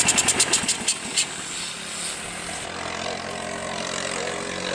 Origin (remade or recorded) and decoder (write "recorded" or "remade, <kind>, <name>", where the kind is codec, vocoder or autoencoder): recorded